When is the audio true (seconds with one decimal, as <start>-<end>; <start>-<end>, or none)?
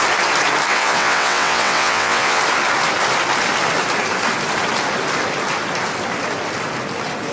0.0-0.7; 2.4-7.3